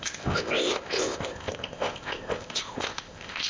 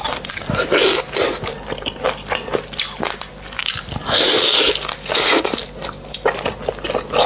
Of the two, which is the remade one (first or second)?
first